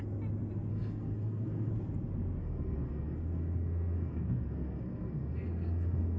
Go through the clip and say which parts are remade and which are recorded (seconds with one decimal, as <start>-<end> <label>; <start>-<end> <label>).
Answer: 0.0-0.7 recorded; 0.7-1.7 remade; 1.7-2.4 recorded; 2.4-6.2 remade